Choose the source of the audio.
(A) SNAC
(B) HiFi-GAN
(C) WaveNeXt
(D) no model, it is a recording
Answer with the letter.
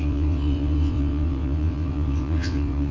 C